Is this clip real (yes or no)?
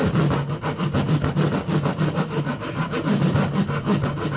yes